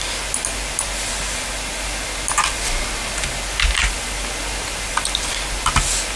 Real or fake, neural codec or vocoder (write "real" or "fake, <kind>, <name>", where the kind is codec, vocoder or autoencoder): real